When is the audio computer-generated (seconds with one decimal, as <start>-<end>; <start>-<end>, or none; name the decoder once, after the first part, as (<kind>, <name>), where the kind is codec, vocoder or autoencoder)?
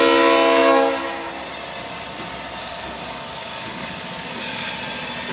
2.6-4.7 (codec, DAC)